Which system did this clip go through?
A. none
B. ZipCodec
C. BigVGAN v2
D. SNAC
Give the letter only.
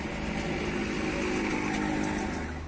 A